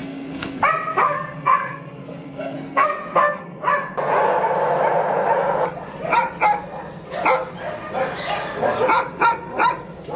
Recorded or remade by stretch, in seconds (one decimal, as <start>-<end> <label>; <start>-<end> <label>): 0.0-0.6 remade; 0.6-1.0 recorded; 1.0-3.6 remade; 3.6-10.2 recorded